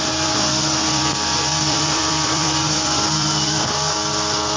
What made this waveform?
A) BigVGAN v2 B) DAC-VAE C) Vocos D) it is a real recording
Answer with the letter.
A